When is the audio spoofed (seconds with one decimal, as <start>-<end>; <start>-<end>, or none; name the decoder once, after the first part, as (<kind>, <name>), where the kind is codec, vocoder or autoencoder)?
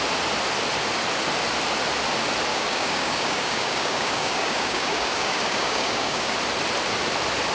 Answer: 2.5-6.3 (codec, DAC)